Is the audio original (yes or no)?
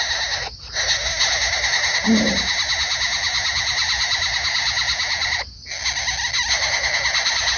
yes